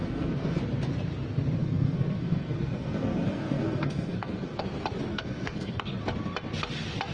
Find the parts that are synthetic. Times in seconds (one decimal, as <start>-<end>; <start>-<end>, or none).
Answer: 0.0-0.6; 1.6-4.6; 5.1-6.0